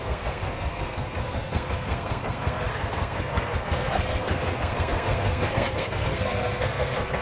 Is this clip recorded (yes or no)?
no